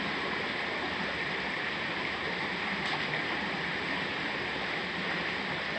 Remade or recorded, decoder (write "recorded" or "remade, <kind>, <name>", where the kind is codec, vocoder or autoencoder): recorded